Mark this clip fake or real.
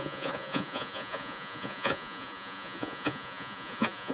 fake